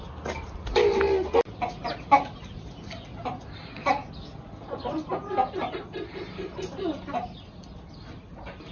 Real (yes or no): yes